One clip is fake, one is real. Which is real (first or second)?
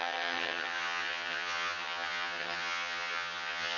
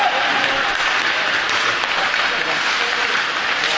second